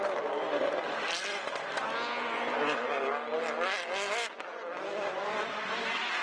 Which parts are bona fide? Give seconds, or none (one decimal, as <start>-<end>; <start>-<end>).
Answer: 0.0-6.2

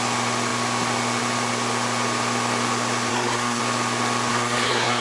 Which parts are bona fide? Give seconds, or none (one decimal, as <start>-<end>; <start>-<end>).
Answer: 0.0-3.1; 3.6-4.3

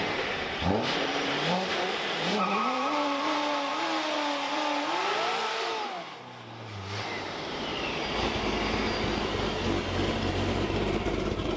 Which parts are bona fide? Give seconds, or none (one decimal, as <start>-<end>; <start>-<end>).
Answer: 3.5-7.1; 7.7-10.3

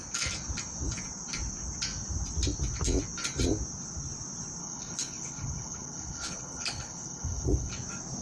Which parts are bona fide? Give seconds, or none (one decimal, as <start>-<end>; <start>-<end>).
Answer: 0.0-4.6; 7.7-8.2

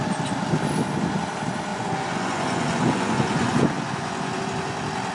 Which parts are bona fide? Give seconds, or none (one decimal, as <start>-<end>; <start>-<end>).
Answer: 0.0-1.7; 4.4-5.1